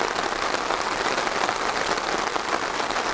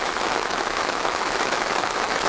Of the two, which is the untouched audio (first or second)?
first